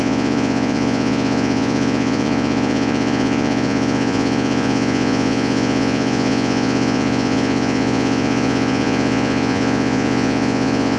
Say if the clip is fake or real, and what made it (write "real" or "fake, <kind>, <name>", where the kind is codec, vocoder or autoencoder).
fake, vocoder, Vocos